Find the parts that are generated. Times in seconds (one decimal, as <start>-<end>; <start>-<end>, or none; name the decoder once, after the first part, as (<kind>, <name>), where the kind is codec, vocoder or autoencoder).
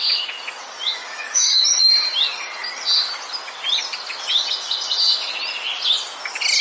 1.0-1.6 (autoencoder, DAC-VAE)